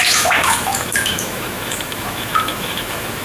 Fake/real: fake